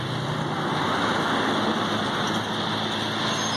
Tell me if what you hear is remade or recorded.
recorded